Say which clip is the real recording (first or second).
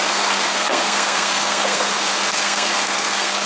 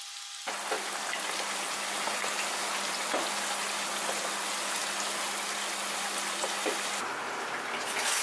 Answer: second